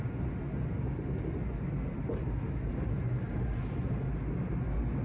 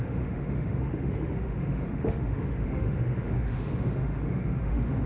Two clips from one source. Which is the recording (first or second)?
first